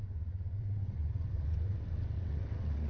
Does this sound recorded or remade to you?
remade